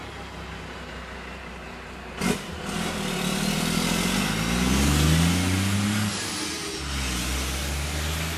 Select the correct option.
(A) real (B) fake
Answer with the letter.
A